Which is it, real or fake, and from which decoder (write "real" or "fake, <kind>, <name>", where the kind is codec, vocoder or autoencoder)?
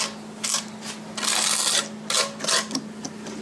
real